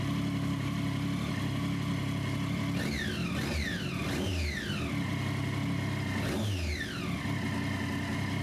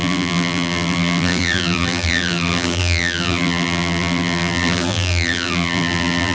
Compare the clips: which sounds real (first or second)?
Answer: first